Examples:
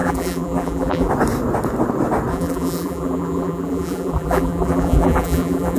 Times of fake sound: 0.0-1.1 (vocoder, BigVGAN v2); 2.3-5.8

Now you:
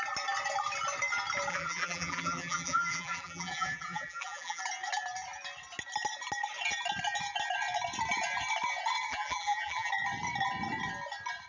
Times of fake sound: 1.5-4.6 (vocoder, BigVGAN v2); 9.1-9.9

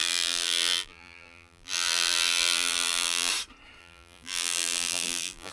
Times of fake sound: 0.0-3.3 (vocoder, BigVGAN v2); 3.8-5.5

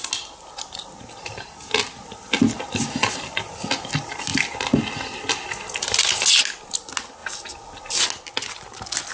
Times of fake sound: none

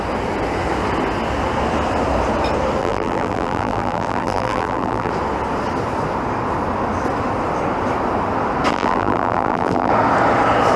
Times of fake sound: 2.8-5.1 (vocoder, BigVGAN v2); 8.7-9.9

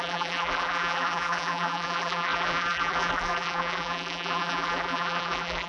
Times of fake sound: 0.0-5.7 (vocoder, BigVGAN v2)

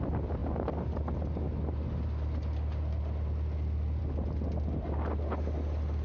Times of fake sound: none

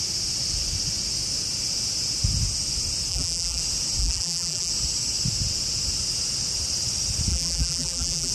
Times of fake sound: 3.1-3.6 (vocoder, BigVGAN v2); 4.0-4.7; 7.3-8.3